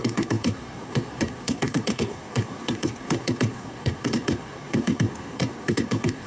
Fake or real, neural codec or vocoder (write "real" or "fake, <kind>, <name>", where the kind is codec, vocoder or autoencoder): fake, codec, SNAC